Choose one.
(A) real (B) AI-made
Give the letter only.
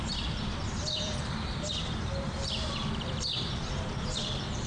B